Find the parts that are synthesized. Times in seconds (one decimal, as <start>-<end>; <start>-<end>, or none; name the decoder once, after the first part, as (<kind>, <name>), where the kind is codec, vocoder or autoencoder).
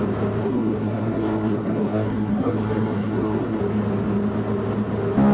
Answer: 0.4-3.6 (codec, SNAC)